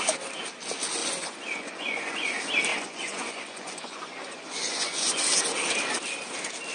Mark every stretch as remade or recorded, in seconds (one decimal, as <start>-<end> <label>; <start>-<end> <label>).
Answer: 0.0-1.0 recorded; 1.0-2.3 remade; 2.3-2.7 recorded; 2.7-5.2 remade; 5.2-6.7 recorded